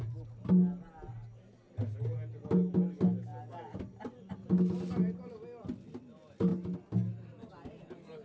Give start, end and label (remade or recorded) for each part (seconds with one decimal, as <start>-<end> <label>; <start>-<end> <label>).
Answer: 0.0-8.2 recorded